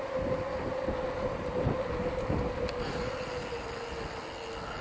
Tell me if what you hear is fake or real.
real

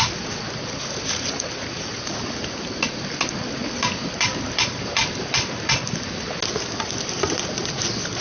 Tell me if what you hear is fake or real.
real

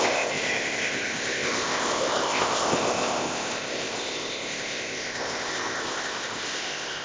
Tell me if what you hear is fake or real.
fake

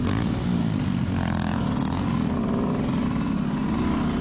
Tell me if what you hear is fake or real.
real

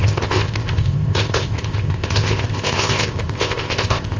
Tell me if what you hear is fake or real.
fake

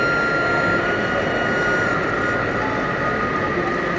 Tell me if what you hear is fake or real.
real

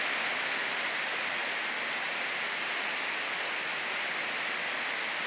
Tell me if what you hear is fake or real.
real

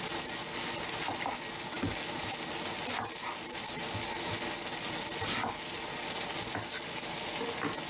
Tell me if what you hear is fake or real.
real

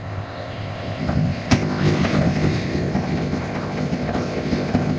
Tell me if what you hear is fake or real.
fake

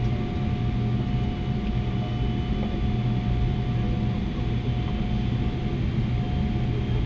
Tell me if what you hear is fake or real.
real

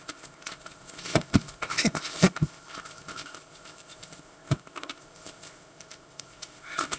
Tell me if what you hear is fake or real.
fake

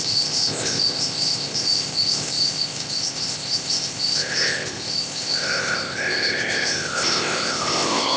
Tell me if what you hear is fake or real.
fake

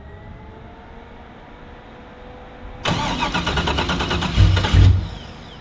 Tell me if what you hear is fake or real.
real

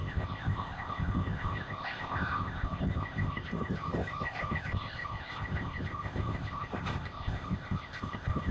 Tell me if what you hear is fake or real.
fake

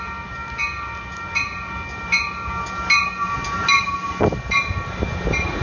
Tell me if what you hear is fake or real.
real